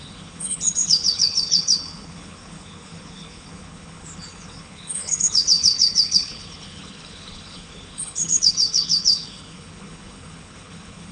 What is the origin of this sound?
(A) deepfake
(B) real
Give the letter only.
A